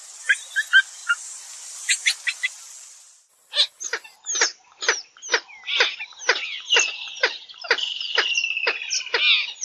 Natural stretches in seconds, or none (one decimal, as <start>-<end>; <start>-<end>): 0.0-9.6